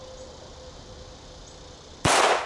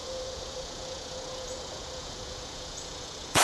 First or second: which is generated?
second